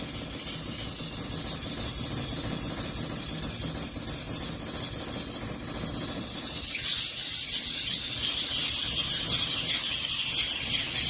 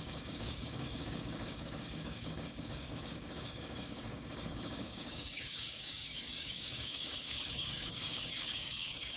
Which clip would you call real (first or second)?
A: first